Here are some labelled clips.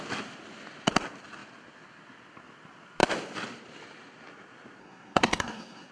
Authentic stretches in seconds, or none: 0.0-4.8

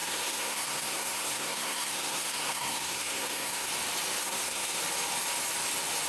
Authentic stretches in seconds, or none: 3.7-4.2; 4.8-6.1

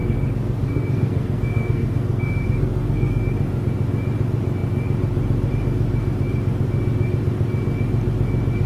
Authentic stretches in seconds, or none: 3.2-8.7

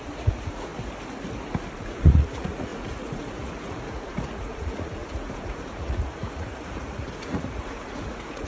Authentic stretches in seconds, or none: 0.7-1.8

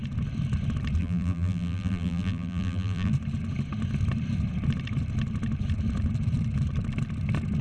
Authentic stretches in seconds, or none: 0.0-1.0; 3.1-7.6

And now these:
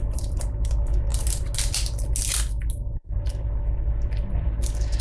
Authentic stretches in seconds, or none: 0.0-5.0